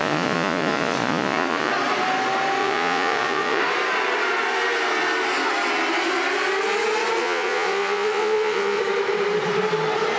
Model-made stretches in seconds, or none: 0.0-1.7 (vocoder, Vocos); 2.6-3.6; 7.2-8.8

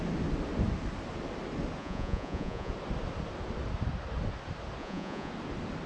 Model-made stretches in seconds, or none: 1.8-2.7 (vocoder, Vocos); 4.8-5.3

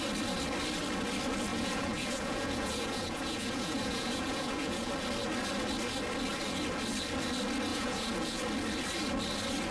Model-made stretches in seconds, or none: 1.5-4.9 (vocoder, Vocos); 7.7-8.4

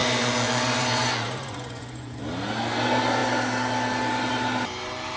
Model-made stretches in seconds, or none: 0.0-2.2 (vocoder, Vocos)

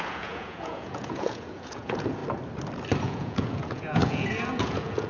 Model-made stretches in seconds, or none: 0.0-2.2 (vocoder, Vocos); 3.0-5.1

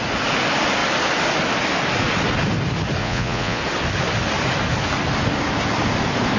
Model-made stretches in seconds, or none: 3.0-3.6 (vocoder, Vocos)